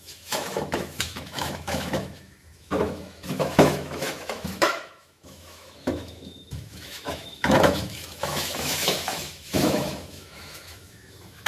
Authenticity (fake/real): fake